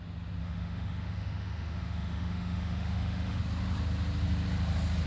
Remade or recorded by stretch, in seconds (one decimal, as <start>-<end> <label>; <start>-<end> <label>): 0.0-0.4 recorded; 0.4-3.4 remade; 3.4-5.1 recorded